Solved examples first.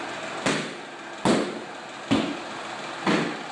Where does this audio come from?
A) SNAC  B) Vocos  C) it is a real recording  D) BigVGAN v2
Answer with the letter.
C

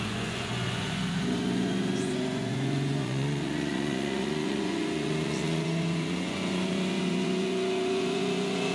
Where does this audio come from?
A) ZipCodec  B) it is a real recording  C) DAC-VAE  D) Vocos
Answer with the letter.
D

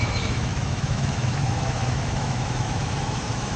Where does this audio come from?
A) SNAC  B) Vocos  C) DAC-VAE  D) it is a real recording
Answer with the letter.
C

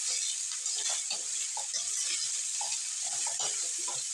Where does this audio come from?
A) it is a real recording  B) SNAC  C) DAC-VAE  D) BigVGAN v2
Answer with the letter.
A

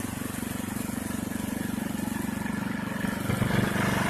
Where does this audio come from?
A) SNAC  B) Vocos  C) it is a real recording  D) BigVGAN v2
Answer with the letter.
C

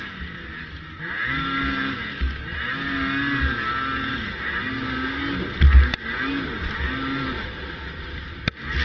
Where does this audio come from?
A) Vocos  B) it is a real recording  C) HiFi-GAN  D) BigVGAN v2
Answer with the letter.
B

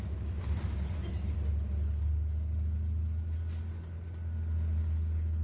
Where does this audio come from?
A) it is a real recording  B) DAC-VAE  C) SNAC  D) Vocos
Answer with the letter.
A